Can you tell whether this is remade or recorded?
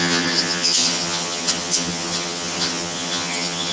remade